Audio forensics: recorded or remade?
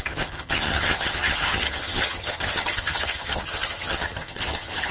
remade